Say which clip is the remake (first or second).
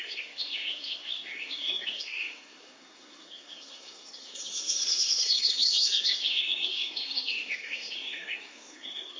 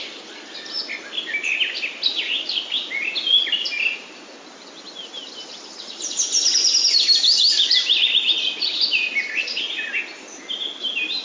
first